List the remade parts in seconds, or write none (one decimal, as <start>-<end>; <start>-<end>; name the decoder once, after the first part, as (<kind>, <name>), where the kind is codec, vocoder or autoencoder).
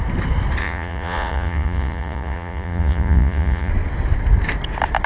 0.6-3.7 (vocoder, Vocos)